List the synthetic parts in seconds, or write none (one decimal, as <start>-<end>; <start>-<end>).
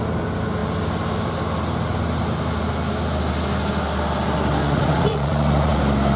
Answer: 4.6-5.8